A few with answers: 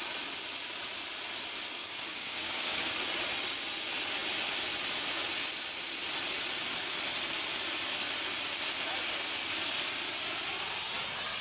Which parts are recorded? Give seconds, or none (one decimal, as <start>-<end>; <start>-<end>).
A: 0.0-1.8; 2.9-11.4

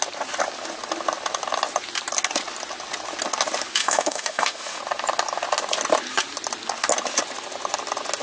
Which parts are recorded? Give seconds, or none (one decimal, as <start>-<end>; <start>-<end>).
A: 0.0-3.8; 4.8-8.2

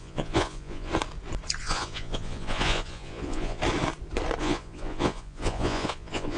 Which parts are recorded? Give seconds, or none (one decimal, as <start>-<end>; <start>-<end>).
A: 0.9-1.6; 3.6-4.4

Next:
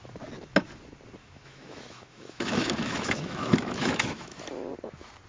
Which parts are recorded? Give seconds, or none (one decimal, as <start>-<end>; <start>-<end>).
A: 0.0-1.2; 4.4-5.3

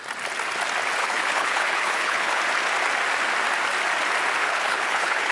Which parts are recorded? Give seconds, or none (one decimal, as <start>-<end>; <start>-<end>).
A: 0.0-1.0; 2.4-4.4

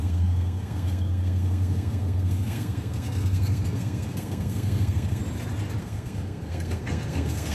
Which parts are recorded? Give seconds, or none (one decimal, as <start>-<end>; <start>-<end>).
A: 5.2-5.8

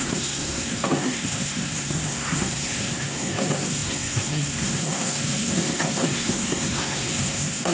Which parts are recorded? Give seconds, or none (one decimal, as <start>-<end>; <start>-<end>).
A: none